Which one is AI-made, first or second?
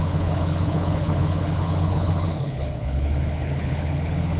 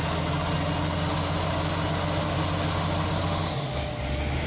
first